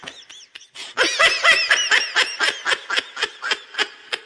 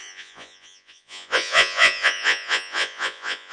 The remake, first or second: second